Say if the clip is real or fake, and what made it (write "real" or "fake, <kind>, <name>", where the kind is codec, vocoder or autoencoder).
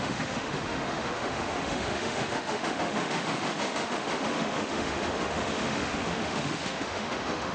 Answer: fake, autoencoder, DAC-VAE